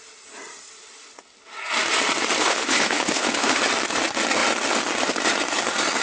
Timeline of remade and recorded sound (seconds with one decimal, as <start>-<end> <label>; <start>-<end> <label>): 0.0-2.4 recorded; 2.4-3.6 remade; 3.6-6.0 recorded